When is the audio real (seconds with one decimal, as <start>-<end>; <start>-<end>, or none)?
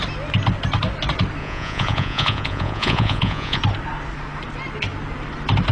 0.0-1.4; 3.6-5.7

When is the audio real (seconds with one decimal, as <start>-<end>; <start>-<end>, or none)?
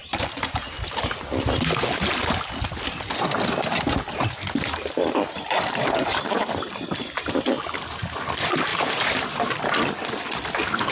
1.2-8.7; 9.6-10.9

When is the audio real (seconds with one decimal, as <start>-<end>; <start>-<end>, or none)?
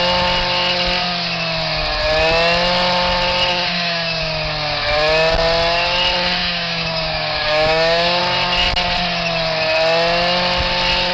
0.0-3.5; 4.2-6.4; 8.2-11.1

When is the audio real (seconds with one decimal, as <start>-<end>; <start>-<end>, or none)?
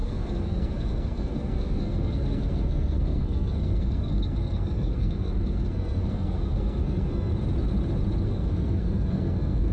7.3-8.2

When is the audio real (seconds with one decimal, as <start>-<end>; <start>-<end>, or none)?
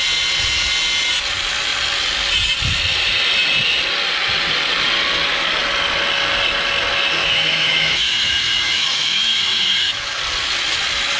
0.0-7.2; 10.2-11.2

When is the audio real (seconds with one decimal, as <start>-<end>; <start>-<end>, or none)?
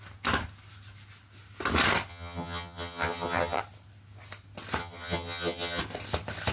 0.0-2.1; 3.6-4.8; 5.8-6.5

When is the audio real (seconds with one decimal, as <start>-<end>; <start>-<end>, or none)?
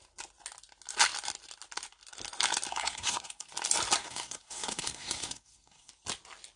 0.0-2.7; 3.5-4.0; 5.9-6.6